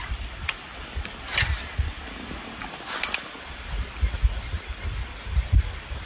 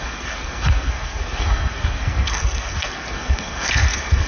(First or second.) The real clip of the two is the first